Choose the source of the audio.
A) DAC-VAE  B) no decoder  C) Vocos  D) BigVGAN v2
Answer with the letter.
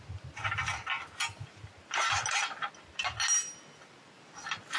B